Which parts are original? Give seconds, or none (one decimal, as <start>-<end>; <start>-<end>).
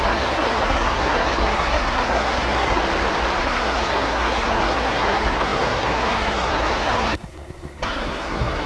2.8-3.4